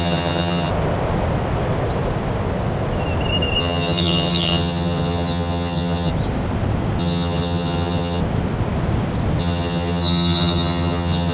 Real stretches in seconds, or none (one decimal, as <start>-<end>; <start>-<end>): 0.7-3.6; 6.1-7.0; 8.2-9.4